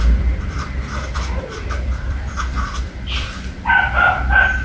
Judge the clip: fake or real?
fake